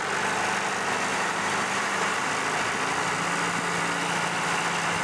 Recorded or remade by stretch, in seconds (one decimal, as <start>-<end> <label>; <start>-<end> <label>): 0.0-1.1 recorded; 1.1-2.3 remade; 2.3-5.0 recorded